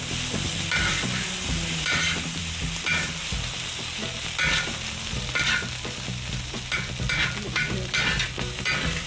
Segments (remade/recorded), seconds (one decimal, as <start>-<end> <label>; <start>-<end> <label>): 0.0-9.1 recorded